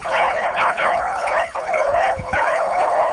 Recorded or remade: remade